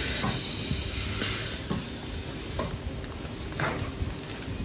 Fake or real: real